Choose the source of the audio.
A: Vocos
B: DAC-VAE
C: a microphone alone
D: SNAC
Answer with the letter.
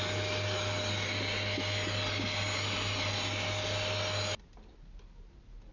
C